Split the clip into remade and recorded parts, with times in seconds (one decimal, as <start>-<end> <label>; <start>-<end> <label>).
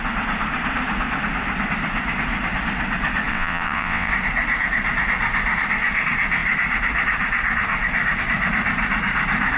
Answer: 0.0-3.3 recorded; 3.3-4.1 remade; 4.1-9.6 recorded